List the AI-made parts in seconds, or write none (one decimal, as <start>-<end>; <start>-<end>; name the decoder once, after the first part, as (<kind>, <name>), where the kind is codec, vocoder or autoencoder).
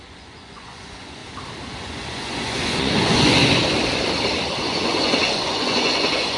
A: 0.0-1.2 (vocoder, Vocos); 1.8-3.4; 4.6-6.4